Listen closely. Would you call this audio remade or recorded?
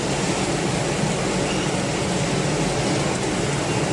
recorded